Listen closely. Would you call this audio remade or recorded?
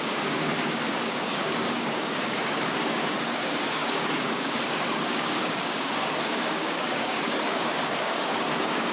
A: remade